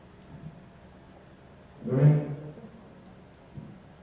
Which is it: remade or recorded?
recorded